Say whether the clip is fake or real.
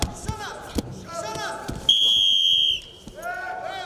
real